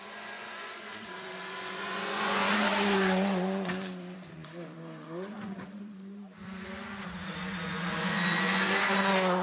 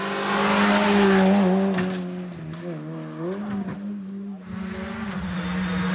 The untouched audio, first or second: second